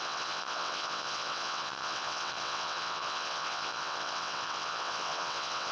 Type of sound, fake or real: fake